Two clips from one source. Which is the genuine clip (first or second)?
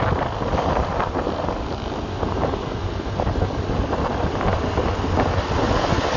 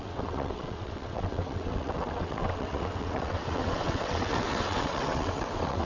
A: first